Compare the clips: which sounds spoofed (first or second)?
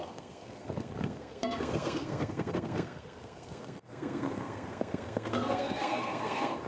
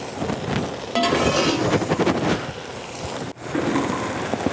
first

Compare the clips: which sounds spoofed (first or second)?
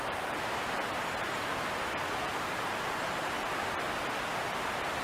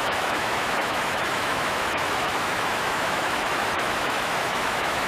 second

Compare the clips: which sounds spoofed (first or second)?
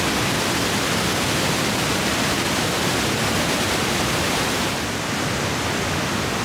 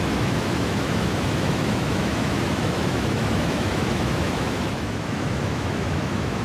second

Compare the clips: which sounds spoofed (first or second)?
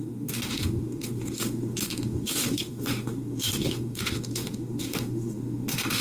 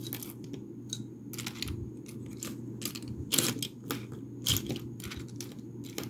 first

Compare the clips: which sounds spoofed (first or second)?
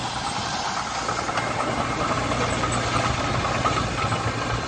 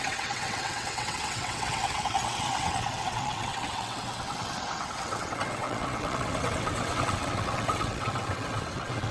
second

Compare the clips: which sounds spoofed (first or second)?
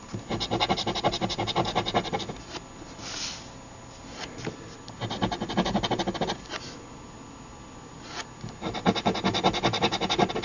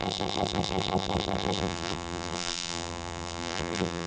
second